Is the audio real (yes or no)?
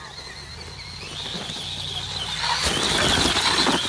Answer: yes